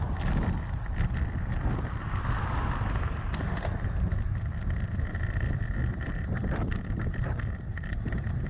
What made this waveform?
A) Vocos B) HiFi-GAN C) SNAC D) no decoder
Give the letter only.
D